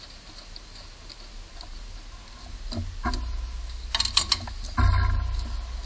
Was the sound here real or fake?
real